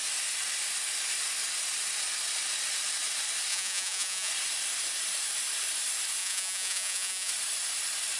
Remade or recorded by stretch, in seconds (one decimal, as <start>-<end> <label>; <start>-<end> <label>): 0.0-3.5 recorded; 3.5-4.3 remade; 4.3-6.2 recorded; 6.2-7.3 remade; 7.3-8.2 recorded